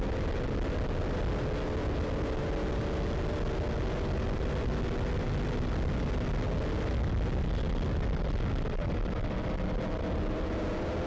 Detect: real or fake real